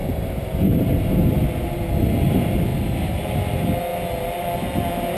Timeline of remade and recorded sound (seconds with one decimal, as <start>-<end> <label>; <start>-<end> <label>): 0.0-0.6 remade; 0.6-2.7 recorded; 2.7-3.3 remade; 3.3-5.2 recorded